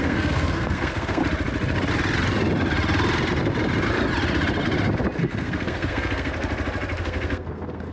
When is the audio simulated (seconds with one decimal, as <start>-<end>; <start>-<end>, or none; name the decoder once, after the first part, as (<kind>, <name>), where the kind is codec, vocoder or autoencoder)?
0.0-1.2 (codec, SNAC); 5.2-6.3; 7.0-7.9